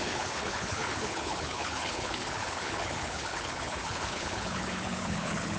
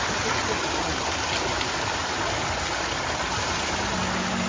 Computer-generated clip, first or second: first